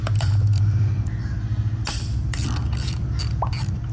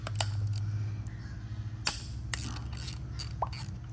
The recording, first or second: second